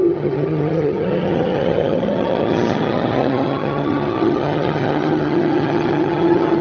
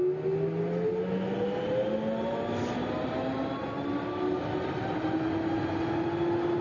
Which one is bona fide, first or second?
second